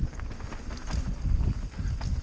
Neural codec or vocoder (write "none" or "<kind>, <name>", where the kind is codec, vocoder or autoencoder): none